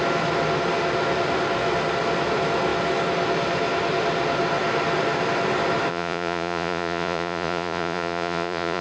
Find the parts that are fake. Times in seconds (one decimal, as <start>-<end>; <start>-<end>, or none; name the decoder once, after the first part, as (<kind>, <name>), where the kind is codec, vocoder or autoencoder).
5.9-8.8 (vocoder, Vocos)